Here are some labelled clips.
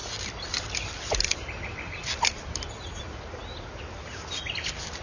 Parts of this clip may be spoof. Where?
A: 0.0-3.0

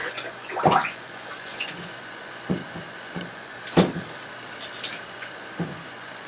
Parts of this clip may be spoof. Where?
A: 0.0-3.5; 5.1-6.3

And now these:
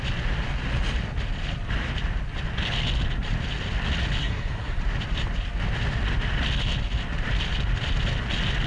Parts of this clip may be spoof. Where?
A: 4.2-4.8

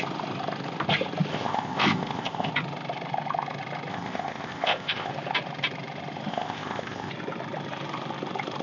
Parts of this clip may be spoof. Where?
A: 1.3-2.5; 3.9-5.1; 6.3-7.1

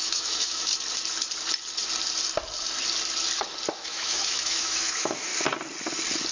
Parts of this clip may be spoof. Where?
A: 0.0-0.7; 3.7-5.3

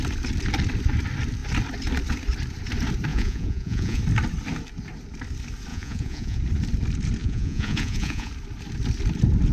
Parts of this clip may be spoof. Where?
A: 3.1-4.0; 5.7-6.4; 7.2-8.3